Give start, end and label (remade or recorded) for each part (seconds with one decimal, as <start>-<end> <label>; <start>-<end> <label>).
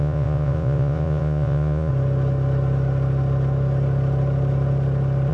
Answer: 0.0-1.9 remade; 1.9-5.3 recorded